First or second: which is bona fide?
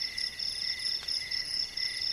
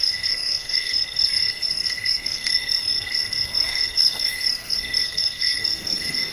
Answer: first